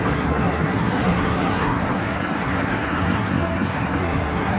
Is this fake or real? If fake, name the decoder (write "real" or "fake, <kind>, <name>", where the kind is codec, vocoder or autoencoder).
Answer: fake, codec, SNAC